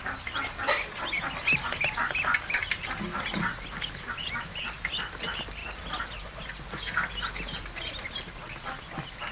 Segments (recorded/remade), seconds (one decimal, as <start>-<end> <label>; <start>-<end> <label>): 0.0-9.3 recorded